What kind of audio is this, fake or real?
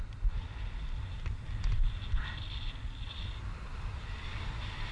real